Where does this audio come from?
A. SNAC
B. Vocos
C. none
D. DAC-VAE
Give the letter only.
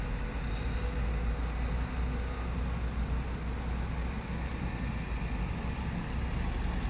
C